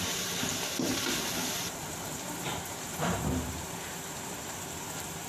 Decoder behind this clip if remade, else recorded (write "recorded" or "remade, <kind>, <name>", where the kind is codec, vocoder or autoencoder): remade, vocoder, BigVGAN v2